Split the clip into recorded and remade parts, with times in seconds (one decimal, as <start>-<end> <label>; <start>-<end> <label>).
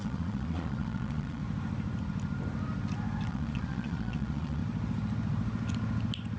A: 0.0-1.4 remade; 1.4-3.3 recorded; 3.3-4.6 remade; 4.6-6.4 recorded